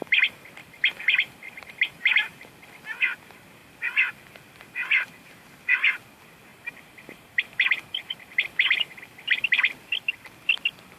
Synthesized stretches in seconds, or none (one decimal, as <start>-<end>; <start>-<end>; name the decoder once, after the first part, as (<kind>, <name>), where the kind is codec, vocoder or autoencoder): 0.6-2.5 (vocoder, BigVGAN v2); 6.5-8.9

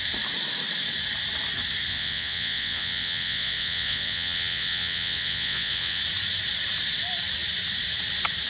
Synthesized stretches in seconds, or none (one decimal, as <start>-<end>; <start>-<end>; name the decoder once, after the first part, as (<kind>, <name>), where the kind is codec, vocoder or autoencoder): 1.9-6.0 (vocoder, WaveNeXt)

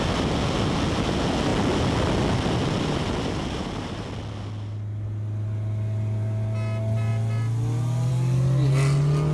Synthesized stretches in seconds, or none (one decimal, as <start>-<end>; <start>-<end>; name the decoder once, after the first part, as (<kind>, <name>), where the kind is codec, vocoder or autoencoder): none

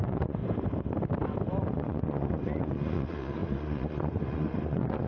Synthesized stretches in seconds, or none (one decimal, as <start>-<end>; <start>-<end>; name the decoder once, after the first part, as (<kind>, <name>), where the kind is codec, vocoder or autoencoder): 0.0-0.4 (vocoder, Vocos); 1.7-5.1